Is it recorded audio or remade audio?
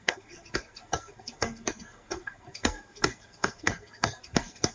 remade